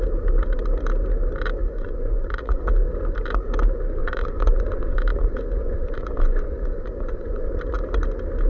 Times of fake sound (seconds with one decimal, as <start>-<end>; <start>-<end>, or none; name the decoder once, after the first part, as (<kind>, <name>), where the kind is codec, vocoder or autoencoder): 1.6-2.6 (vocoder, Vocos); 4.0-7.5